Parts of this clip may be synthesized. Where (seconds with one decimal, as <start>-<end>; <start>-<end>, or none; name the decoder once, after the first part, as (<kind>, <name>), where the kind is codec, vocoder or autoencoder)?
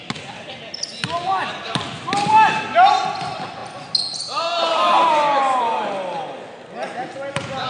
none